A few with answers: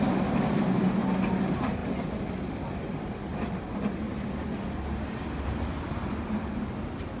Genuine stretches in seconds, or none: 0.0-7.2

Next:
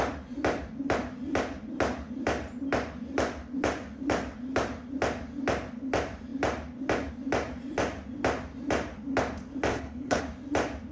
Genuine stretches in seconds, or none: 0.0-9.7; 10.2-10.9

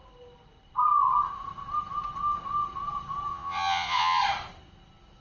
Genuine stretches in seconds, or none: 0.0-3.3; 4.2-5.2